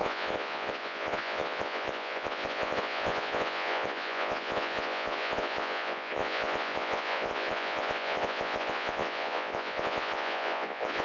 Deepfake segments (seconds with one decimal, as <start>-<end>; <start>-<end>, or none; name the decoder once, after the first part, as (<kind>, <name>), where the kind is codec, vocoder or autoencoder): 0.0-11.0 (vocoder, Vocos)